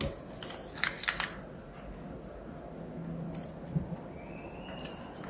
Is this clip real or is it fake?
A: real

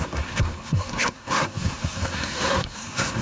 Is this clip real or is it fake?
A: fake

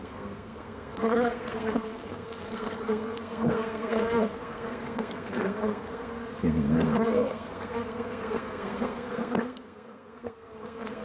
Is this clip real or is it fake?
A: fake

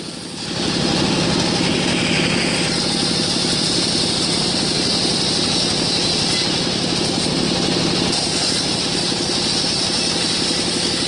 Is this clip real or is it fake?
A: real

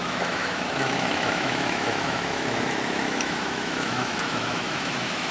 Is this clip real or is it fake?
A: fake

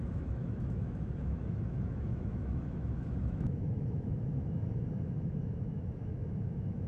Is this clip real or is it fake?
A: fake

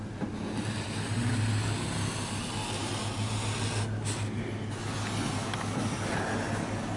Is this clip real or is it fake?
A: real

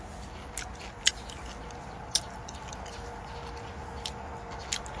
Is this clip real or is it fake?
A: real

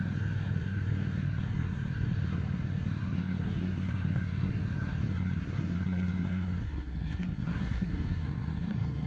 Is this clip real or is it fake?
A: fake